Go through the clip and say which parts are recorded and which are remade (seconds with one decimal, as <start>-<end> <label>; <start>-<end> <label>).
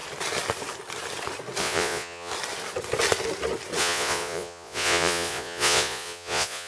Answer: 0.0-1.6 recorded; 1.6-2.3 remade; 2.3-3.8 recorded; 3.8-6.7 remade